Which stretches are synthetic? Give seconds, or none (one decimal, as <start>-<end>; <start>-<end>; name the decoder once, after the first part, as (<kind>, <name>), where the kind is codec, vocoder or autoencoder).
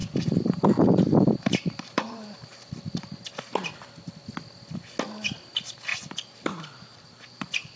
0.0-3.2 (vocoder, BigVGAN v2); 5.9-7.8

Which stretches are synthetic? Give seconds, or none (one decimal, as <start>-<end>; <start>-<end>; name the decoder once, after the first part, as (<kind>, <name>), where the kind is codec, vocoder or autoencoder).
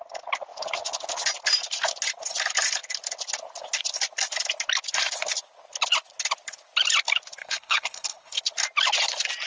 7.4-8.4 (codec, HILCodec)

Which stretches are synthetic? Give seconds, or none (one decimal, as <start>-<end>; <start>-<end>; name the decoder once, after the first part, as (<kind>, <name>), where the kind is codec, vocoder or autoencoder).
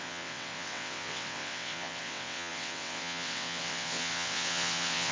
0.0-5.1 (vocoder, WaveNeXt)